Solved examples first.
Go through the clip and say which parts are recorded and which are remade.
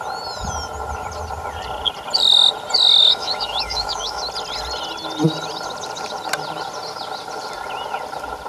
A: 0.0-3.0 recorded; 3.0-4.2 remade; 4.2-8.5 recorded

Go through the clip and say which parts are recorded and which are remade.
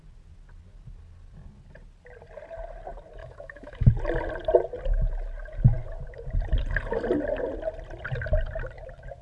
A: 0.0-3.2 recorded; 3.2-3.9 remade; 3.9-9.2 recorded